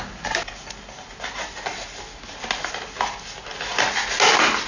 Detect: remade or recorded recorded